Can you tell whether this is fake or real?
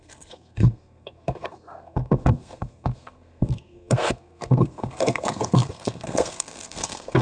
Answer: fake